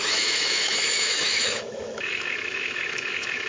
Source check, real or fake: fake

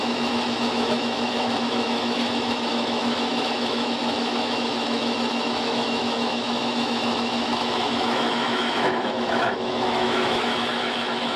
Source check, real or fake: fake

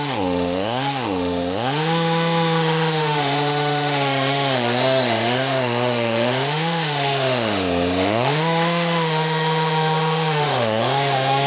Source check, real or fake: fake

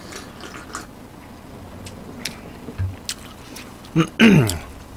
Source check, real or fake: real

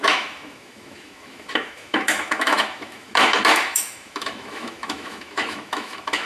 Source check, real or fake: fake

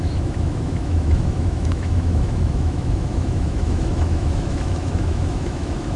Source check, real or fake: fake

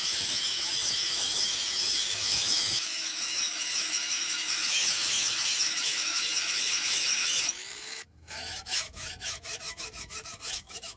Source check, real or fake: fake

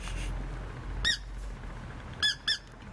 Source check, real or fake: real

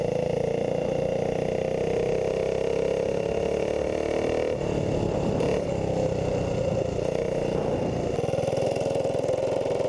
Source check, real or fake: real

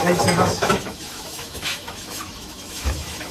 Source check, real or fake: fake